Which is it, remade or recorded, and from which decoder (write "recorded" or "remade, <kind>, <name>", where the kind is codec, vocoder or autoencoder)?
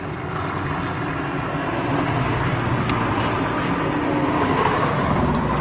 recorded